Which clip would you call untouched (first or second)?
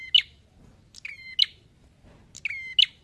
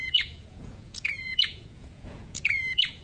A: first